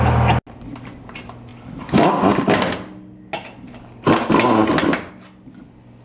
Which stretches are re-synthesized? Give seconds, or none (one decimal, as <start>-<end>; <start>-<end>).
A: none